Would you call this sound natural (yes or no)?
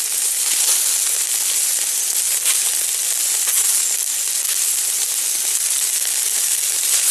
yes